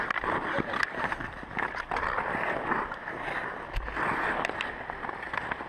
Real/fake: real